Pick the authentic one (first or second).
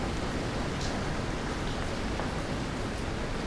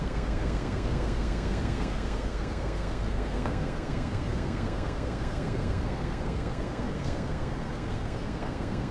first